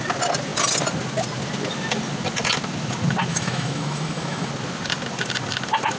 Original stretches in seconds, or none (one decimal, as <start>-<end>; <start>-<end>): 0.0-3.3; 4.5-6.0